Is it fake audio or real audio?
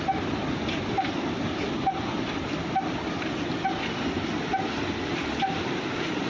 real